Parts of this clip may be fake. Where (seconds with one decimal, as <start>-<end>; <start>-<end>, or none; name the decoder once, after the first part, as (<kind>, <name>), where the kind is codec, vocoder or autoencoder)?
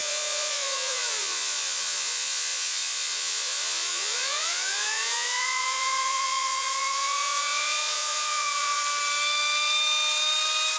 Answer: 0.0-8.8 (vocoder, Vocos)